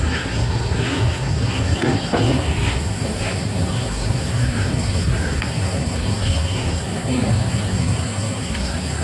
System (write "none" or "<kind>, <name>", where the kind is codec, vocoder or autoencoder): codec, SNAC